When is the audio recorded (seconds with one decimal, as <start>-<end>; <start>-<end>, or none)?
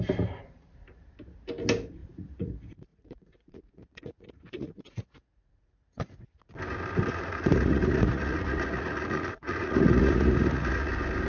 0.0-2.0; 2.5-2.9; 6.3-7.1; 10.9-11.3